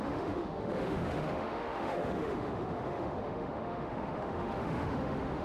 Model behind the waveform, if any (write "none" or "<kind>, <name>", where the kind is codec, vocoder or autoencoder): autoencoder, DAC-VAE